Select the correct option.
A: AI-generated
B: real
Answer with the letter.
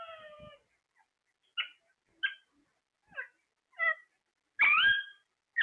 B